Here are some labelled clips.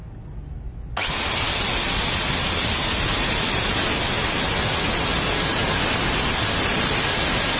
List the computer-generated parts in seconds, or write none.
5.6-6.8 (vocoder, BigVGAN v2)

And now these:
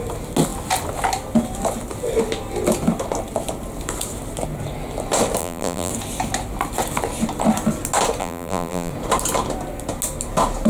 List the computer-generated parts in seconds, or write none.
5.4-5.9 (vocoder, BigVGAN v2); 8.2-8.9

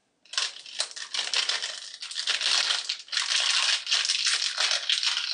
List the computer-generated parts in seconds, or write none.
none